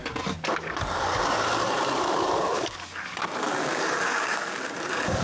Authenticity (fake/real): fake